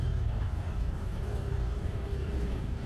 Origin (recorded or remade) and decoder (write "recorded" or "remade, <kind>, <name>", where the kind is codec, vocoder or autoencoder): remade, codec, DAC